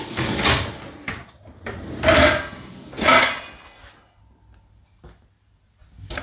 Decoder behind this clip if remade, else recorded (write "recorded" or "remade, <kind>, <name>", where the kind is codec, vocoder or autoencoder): recorded